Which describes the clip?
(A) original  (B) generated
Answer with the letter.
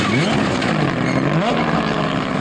A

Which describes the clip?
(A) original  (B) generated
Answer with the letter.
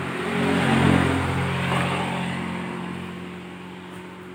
A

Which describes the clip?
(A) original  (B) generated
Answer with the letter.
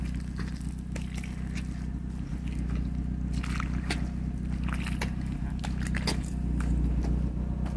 A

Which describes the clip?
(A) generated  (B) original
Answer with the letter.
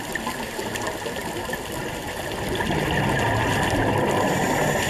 B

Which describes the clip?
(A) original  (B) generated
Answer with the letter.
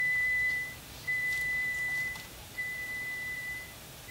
B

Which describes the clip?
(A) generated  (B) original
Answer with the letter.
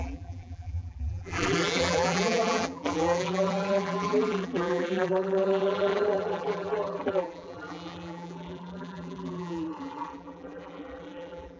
A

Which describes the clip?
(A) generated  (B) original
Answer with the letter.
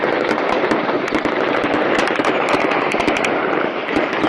A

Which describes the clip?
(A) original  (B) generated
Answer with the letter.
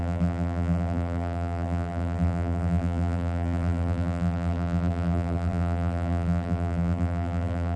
B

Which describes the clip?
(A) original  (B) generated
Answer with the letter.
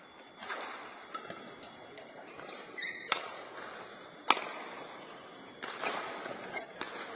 B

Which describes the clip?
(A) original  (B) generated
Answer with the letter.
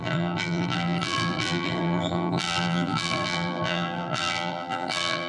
B